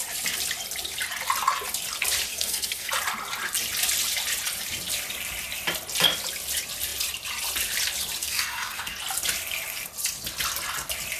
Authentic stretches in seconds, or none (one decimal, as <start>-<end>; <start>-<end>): 0.0-2.3; 2.9-8.2; 8.9-11.2